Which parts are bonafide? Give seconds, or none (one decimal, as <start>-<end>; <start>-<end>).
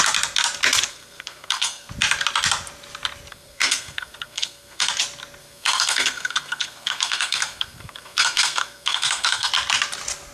0.0-0.9; 1.9-3.3; 4.9-5.4; 9.5-10.3